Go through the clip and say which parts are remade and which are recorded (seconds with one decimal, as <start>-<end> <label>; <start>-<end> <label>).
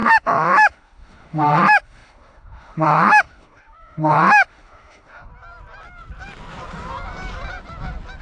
0.0-5.3 remade; 5.3-8.2 recorded